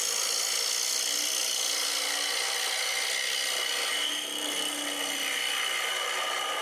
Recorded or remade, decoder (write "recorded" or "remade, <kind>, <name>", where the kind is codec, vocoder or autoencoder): recorded